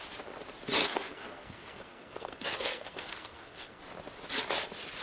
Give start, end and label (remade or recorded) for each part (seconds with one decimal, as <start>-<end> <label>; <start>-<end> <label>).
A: 0.0-0.8 recorded; 0.8-3.8 remade; 3.8-5.0 recorded